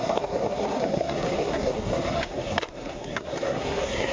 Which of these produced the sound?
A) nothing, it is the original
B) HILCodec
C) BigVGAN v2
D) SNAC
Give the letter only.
D